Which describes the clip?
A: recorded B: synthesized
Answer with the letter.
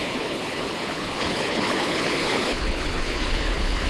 B